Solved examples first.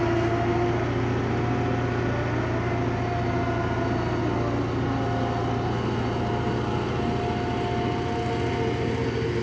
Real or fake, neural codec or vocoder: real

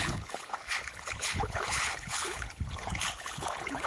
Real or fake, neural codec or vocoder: fake, codec, HILCodec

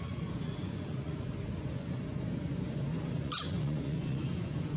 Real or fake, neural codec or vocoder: fake, vocoder, Vocos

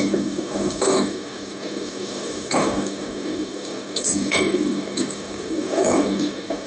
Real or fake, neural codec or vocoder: fake, codec, DAC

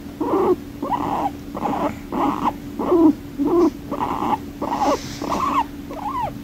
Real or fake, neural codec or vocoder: real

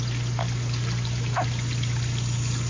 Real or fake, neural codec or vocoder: real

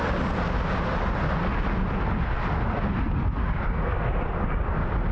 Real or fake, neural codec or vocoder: real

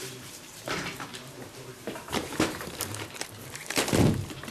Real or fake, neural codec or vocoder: fake, vocoder, BigVGAN v2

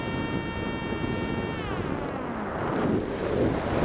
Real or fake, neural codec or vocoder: real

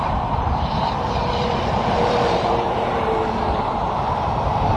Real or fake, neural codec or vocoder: fake, vocoder, BigVGAN v2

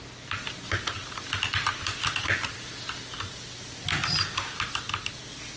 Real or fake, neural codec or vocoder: real